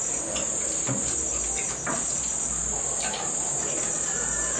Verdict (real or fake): real